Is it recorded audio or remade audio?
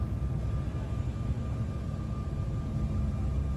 recorded